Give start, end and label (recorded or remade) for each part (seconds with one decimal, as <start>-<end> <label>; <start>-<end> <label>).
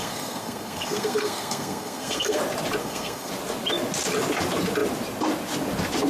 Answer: 0.0-2.4 remade; 2.4-2.8 recorded; 2.8-3.3 remade; 3.3-6.1 recorded